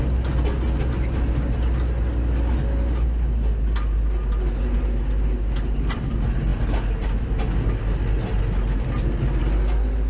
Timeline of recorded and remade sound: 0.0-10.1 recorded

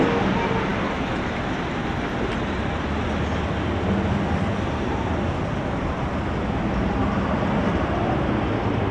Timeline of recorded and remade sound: 0.0-8.9 recorded